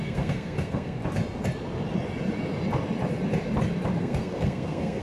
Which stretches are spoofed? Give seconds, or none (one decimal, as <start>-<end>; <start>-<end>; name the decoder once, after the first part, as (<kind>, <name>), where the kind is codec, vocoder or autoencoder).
0.0-1.0 (codec, SNAC); 4.0-5.0